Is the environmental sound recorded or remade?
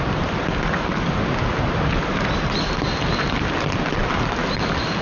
recorded